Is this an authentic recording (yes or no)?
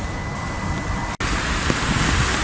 yes